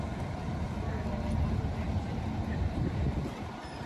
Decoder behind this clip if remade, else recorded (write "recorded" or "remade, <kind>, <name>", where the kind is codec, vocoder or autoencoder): recorded